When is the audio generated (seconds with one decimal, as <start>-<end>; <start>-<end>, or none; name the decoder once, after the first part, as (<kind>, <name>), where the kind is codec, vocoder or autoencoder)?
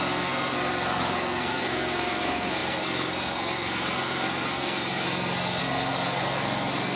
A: 0.0-7.0 (codec, SNAC)